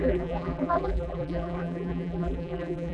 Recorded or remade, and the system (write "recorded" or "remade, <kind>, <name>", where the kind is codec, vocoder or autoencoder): remade, vocoder, BigVGAN v2